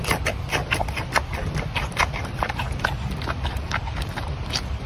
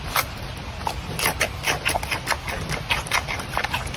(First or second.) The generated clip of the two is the first